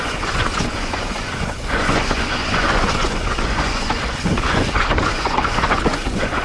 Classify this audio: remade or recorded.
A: remade